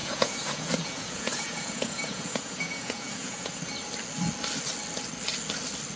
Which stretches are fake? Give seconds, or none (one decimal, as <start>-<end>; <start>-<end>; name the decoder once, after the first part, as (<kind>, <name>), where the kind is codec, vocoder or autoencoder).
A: 0.0-3.6 (vocoder, Vocos)